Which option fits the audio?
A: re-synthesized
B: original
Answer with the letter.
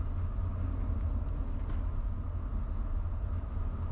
B